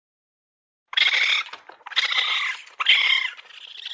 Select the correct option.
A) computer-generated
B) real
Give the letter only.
B